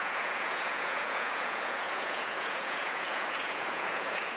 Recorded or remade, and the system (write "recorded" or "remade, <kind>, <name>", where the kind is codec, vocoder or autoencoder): remade, vocoder, Vocos